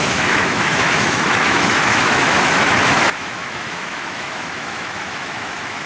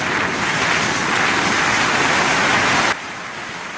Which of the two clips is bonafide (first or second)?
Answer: second